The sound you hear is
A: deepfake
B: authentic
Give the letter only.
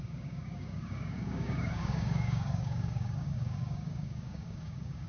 A